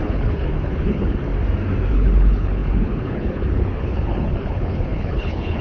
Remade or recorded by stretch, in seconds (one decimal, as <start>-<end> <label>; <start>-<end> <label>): 0.0-1.3 remade; 1.3-1.9 recorded; 1.9-5.6 remade